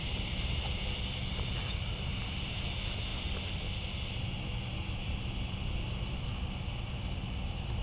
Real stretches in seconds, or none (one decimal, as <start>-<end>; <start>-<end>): 0.0-7.8